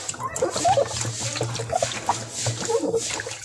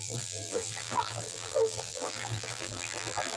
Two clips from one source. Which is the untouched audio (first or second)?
first